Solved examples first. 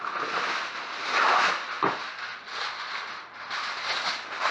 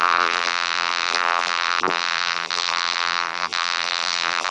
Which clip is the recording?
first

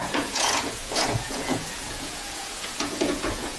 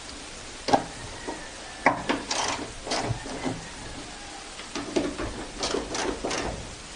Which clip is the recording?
second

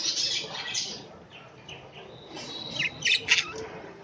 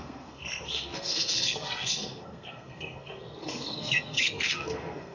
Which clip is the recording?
first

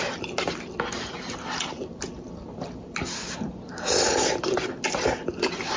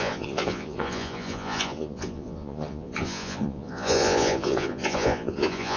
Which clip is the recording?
first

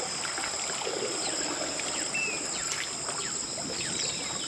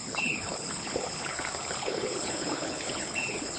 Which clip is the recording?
first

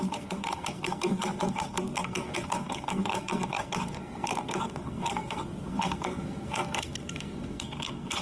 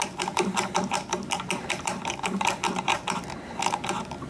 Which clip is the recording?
second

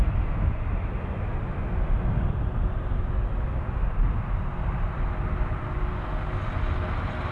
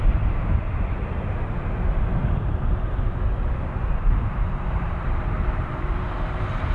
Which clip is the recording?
first